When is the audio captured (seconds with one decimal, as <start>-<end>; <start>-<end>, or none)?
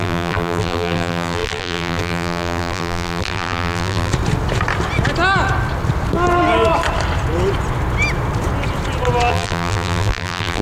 4.1-9.3